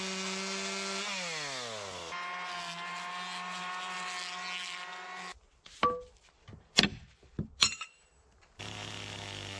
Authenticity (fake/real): real